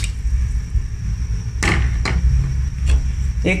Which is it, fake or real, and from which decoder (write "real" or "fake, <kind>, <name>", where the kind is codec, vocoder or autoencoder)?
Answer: real